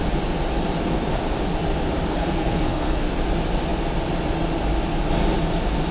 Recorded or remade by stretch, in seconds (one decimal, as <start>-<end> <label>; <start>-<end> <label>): 0.0-0.8 recorded; 0.8-1.4 remade; 1.4-2.1 recorded; 2.1-3.2 remade; 3.2-5.9 recorded